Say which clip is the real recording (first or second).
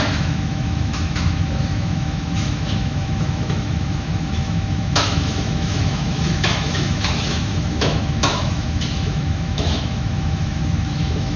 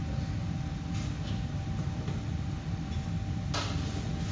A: second